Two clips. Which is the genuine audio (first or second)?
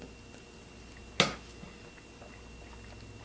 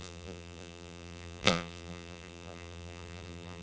first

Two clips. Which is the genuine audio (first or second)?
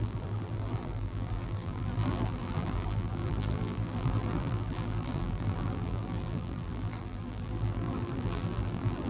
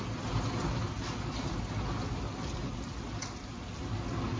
second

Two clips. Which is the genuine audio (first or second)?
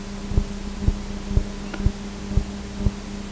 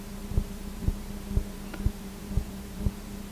first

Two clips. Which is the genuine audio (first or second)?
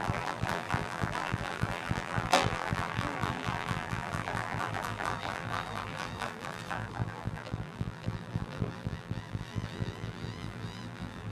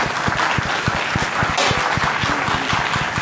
second